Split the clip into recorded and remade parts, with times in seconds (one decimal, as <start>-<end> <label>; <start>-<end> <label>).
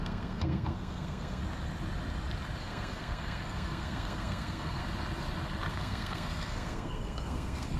0.0-1.4 remade; 1.4-2.6 recorded; 2.6-4.8 remade; 4.8-5.7 recorded; 5.7-7.8 remade